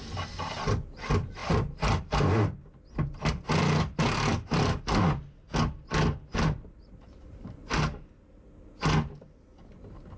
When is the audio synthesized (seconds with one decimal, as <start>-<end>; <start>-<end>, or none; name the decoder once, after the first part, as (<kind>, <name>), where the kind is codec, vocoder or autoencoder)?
6.3-7.8 (vocoder, BigVGAN v2)